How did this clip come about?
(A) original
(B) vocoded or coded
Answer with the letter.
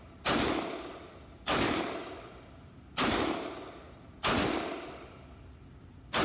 A